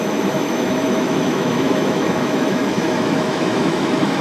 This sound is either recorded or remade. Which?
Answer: remade